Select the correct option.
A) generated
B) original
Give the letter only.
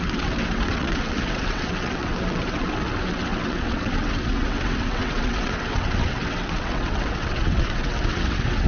A